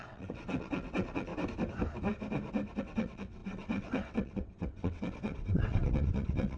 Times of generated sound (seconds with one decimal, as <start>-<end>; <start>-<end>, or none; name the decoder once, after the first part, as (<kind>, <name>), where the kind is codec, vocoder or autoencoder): 0.0-1.3 (vocoder, WaveNeXt); 2.8-6.6